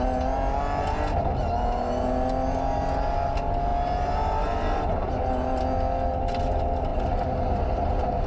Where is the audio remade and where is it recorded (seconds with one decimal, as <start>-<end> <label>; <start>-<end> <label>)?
0.0-8.3 recorded